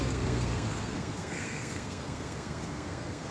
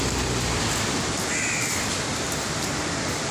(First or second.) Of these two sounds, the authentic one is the second